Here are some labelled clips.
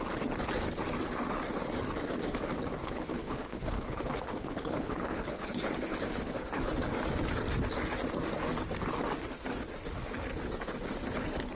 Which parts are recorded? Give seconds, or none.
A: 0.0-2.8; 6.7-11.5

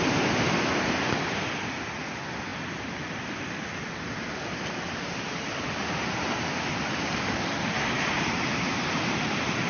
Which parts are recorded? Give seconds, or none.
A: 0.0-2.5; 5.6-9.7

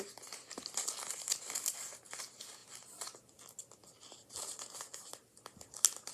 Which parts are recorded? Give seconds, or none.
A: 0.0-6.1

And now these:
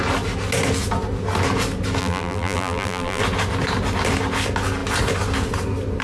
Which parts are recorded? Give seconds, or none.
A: 0.0-2.0; 3.2-6.0

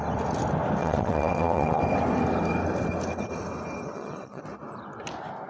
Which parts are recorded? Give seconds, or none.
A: 0.0-0.8; 1.8-3.9; 4.4-5.5

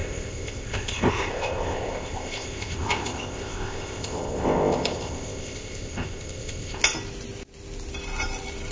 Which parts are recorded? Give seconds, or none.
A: 6.8-8.7

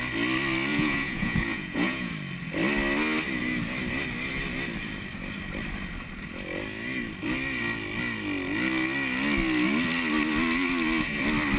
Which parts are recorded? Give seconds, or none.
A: 0.0-0.7; 2.1-11.6